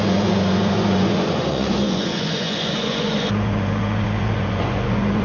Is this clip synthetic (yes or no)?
yes